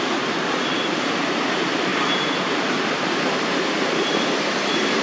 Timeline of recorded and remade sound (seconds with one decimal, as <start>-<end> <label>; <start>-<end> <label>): 0.0-5.0 remade